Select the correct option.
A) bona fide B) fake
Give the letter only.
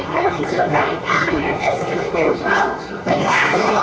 B